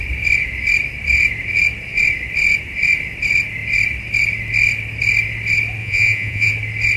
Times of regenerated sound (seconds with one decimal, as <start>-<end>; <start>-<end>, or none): 5.8-6.5